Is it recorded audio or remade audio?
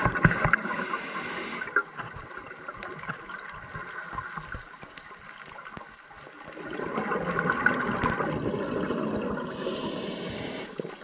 recorded